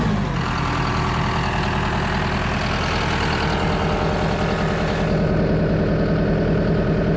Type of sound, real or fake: real